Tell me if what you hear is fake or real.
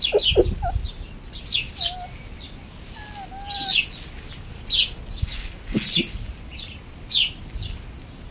real